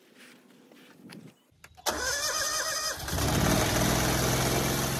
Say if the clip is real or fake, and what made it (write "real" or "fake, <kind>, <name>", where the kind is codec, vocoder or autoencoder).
real